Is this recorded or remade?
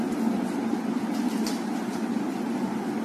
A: recorded